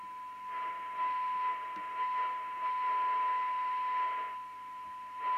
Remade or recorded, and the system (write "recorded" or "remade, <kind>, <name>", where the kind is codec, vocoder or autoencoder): recorded